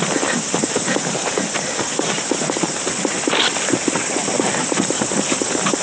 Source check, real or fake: real